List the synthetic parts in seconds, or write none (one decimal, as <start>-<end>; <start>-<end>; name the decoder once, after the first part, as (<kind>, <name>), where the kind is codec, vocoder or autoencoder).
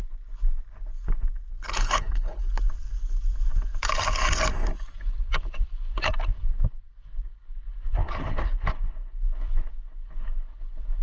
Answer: 1.5-2.4 (codec, HILCodec)